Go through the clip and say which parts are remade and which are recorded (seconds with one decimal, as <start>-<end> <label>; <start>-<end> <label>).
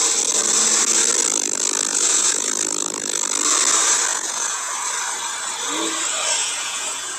0.0-1.9 recorded; 1.9-2.5 remade; 2.5-4.1 recorded; 4.1-4.7 remade; 4.7-6.4 recorded; 6.4-7.2 remade